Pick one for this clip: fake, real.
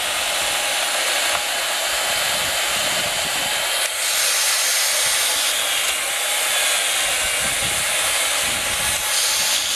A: real